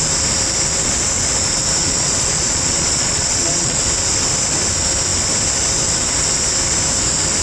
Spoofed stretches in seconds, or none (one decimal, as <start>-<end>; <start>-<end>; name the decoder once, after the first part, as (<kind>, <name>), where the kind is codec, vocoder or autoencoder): 1.8-3.8 (vocoder, Vocos)